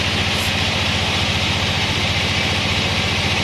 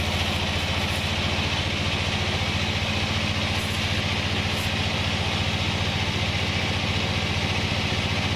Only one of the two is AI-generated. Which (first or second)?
first